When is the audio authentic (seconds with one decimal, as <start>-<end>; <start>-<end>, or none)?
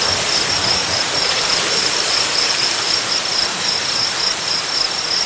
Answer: 0.0-0.8; 3.1-5.3